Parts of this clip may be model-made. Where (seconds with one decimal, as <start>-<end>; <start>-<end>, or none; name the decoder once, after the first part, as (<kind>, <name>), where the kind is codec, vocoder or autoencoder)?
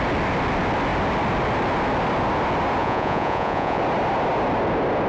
2.8-3.8 (vocoder, Vocos)